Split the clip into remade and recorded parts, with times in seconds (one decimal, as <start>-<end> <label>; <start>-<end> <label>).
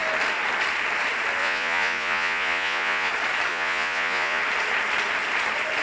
0.0-1.4 recorded; 1.4-3.1 remade; 3.1-3.5 recorded; 3.5-4.4 remade; 4.4-5.8 recorded